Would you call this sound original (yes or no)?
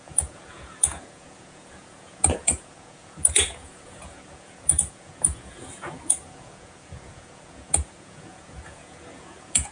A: no